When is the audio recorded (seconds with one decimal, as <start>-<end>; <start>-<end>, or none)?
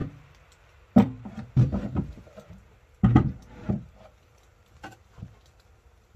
none